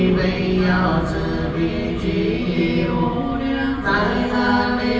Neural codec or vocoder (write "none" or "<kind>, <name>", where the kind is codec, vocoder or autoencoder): none